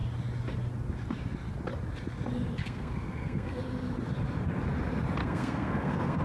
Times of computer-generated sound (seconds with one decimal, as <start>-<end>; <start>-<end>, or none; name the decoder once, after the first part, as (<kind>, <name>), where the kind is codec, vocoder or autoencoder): 2.6-3.6 (codec, SNAC); 5.2-6.2